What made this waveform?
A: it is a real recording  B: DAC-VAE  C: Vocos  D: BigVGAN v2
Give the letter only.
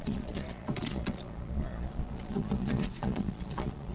C